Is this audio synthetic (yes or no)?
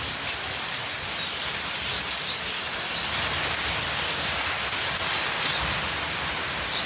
no